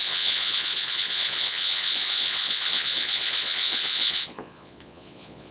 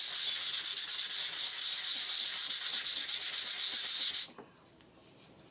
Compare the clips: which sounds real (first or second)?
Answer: second